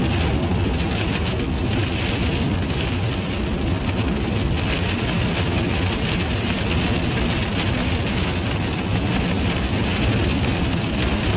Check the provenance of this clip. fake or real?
real